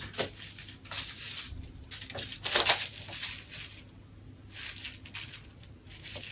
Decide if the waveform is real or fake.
real